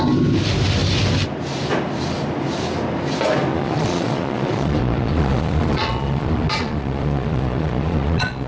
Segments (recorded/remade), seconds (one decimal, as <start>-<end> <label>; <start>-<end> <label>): 0.0-3.5 recorded; 3.5-8.5 remade

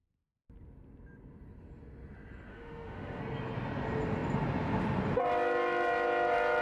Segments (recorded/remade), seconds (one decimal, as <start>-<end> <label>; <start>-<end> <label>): 0.0-2.5 recorded; 2.5-3.2 remade; 3.2-6.6 recorded